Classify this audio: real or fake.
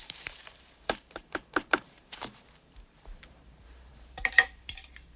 fake